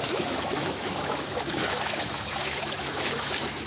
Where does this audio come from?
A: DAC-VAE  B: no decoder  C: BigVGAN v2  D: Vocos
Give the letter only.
A